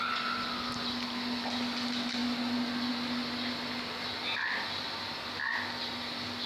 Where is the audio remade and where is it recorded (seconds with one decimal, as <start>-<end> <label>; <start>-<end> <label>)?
0.0-6.5 recorded